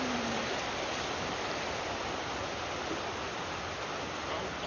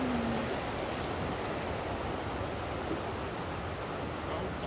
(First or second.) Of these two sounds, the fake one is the first